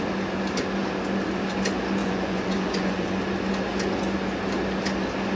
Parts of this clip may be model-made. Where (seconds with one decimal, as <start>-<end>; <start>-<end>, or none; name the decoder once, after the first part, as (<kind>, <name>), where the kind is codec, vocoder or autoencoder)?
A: 2.0-3.2 (vocoder, Vocos)